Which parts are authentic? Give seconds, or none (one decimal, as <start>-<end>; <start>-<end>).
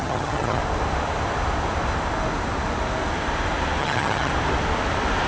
0.6-3.8; 4.3-5.3